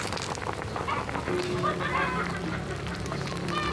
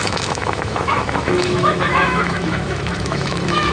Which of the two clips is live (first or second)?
first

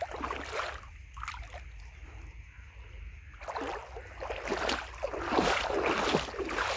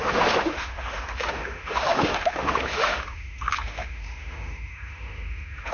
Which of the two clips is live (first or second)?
first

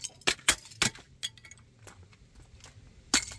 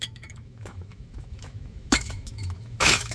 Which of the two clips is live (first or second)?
first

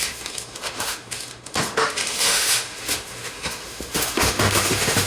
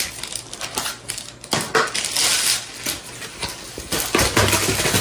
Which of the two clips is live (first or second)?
second